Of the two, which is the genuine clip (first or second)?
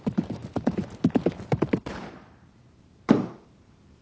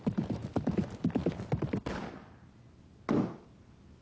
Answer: second